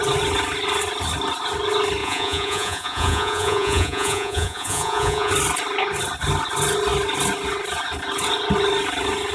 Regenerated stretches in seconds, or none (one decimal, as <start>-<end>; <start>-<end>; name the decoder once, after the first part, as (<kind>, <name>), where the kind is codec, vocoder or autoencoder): 2.0-5.3 (vocoder, Vocos)